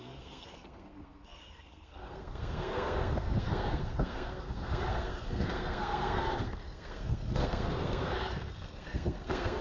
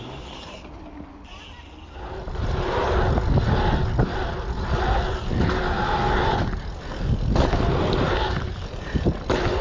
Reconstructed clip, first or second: first